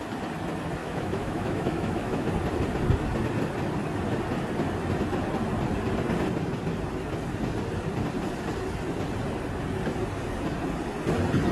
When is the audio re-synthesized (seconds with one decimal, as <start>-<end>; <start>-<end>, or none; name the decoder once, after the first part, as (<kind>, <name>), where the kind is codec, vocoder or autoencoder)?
0.8-2.3 (autoencoder, DAC-VAE)